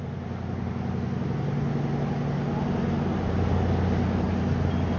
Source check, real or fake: real